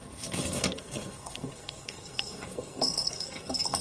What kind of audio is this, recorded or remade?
remade